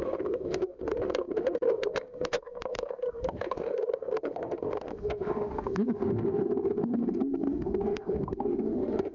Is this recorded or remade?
remade